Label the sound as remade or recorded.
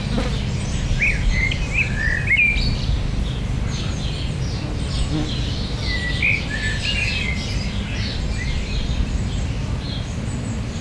recorded